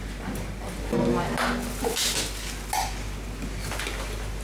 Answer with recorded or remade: recorded